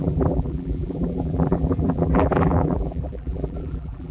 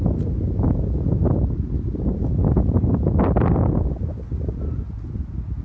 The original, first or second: second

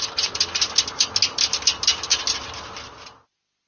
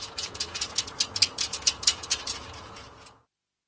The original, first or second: first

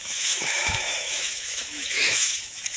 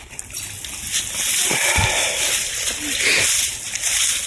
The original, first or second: second